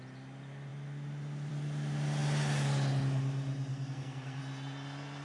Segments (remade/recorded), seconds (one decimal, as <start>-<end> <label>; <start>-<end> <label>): 0.0-3.7 recorded; 3.7-4.4 remade; 4.4-5.2 recorded